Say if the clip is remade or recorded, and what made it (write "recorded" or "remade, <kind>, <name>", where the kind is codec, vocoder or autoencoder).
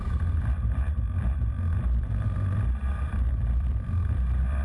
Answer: remade, vocoder, BigVGAN v2